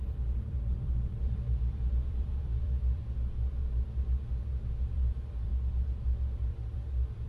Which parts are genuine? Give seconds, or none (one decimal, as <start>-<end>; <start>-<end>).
3.0-4.5